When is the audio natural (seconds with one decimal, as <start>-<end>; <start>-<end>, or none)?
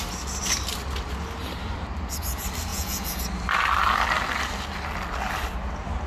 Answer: 0.0-2.7; 3.2-6.1